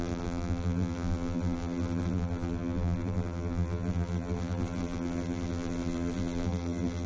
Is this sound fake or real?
fake